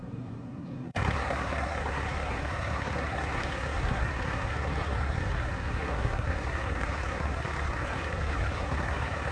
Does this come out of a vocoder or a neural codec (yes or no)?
yes